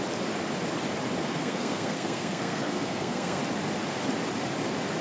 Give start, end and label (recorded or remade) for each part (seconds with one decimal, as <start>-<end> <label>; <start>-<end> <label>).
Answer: 0.0-1.2 recorded; 1.2-3.4 remade; 3.4-5.0 recorded